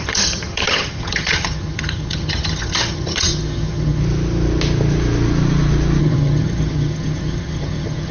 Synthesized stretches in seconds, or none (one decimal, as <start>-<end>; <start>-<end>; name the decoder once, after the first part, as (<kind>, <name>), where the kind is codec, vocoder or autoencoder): 0.0-4.0 (vocoder, HiFi-GAN); 6.0-8.1